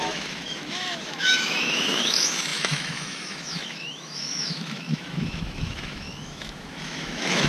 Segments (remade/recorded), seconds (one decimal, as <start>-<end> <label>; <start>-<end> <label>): 0.0-7.5 remade